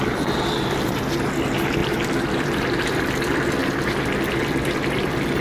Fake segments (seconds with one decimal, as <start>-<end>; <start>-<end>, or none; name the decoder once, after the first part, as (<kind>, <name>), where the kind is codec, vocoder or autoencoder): 1.8-3.0 (vocoder, BigVGAN v2)